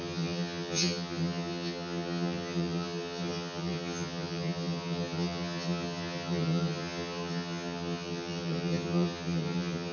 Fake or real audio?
fake